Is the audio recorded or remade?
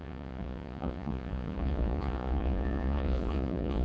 remade